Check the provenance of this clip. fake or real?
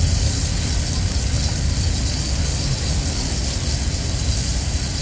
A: real